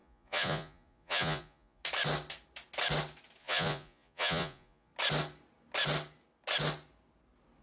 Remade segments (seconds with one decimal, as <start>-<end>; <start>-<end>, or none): 0.0-1.8; 3.4-4.9